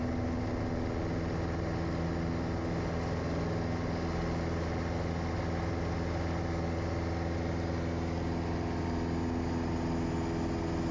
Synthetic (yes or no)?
no